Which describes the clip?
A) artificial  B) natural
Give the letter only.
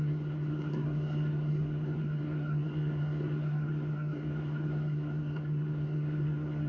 A